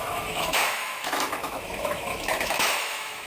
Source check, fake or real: fake